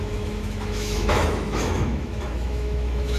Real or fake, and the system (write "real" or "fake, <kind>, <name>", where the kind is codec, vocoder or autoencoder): fake, autoencoder, DAC-VAE